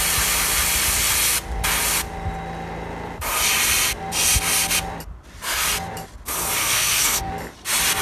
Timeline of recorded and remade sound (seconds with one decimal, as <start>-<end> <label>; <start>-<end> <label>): 0.0-6.6 recorded; 6.6-7.3 remade; 7.3-8.0 recorded